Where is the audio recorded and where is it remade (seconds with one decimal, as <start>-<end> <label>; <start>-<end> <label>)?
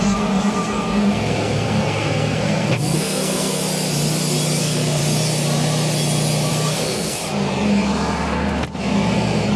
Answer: 0.0-3.6 remade; 3.6-4.6 recorded; 4.6-5.0 remade; 5.0-6.5 recorded; 6.5-7.2 remade; 7.2-9.6 recorded